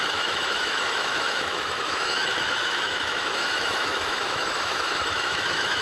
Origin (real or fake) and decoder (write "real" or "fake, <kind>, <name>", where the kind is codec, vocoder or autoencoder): fake, autoencoder, DAC-VAE